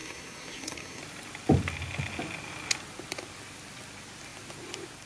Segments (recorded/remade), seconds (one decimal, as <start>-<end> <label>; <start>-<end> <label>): 0.0-1.0 remade; 1.0-5.1 recorded